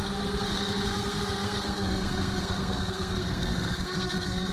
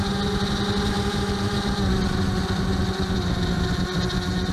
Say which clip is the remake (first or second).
first